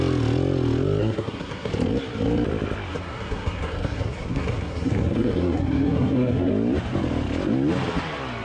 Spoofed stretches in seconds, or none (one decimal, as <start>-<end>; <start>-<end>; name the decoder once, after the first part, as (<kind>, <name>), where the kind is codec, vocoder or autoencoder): 1.0-1.7 (codec, SNAC); 2.9-6.5